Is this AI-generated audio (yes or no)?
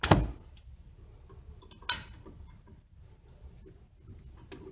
no